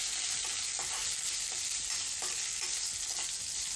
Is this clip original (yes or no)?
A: yes